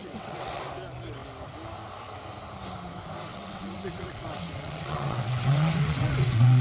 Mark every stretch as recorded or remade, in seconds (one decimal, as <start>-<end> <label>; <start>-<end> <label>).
0.0-0.6 remade; 0.6-3.3 recorded; 3.3-6.6 remade